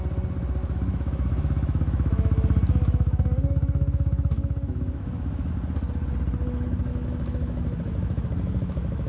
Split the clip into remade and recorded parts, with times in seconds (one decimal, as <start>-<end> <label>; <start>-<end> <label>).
0.0-0.6 recorded; 0.6-5.5 remade; 5.5-6.9 recorded; 6.9-9.1 remade

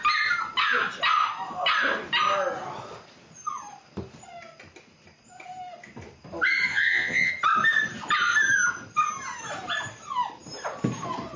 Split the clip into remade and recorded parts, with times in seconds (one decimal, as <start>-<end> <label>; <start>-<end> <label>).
0.0-6.7 recorded; 6.7-7.3 remade; 7.3-11.4 recorded